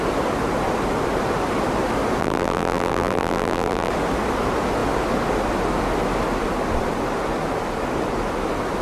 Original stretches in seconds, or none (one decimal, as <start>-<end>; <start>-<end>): 0.0-2.2; 3.9-8.8